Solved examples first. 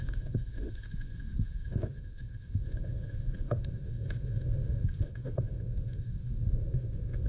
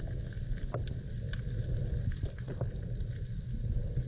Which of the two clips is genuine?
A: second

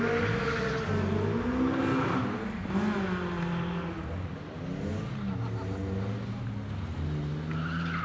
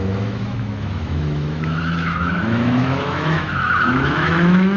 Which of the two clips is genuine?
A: first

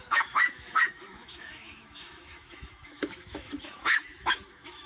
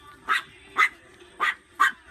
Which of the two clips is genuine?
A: second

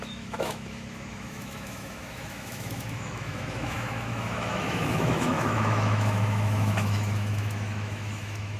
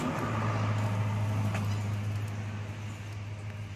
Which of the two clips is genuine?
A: second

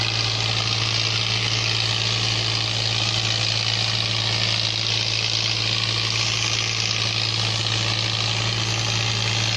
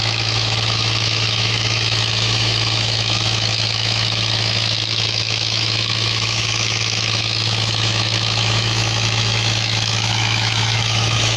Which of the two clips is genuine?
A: first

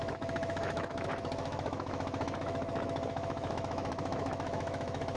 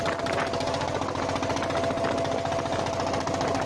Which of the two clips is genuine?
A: second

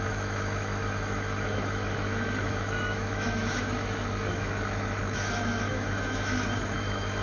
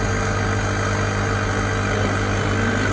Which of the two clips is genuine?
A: second